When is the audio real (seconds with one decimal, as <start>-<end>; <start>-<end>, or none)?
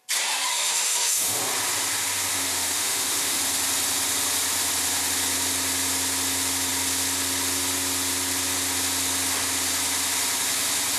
0.0-0.5; 1.4-2.3; 3.4-11.0